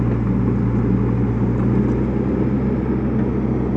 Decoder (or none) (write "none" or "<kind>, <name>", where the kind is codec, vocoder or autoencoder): none